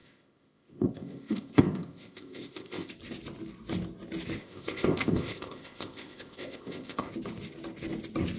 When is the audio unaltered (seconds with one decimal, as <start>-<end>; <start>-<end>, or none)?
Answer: 2.9-4.4; 7.1-8.4